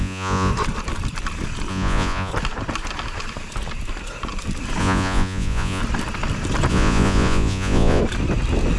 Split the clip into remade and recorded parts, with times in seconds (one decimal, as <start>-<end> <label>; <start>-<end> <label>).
0.0-0.5 remade; 0.5-1.7 recorded; 1.7-2.3 remade; 2.3-4.8 recorded; 4.8-5.8 remade; 5.8-6.7 recorded; 6.7-8.0 remade; 8.0-8.8 recorded